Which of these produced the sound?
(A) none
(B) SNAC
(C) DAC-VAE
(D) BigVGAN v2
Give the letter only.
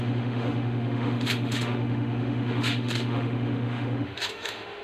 C